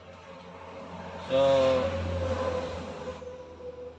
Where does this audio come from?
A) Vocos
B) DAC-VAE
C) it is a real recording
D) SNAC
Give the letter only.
C